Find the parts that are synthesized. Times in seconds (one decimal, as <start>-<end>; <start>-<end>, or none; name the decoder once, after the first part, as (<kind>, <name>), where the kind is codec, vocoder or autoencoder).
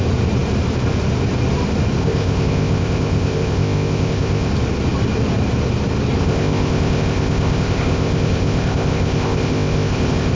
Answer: 2.0-4.5 (codec, ZipCodec); 6.2-10.3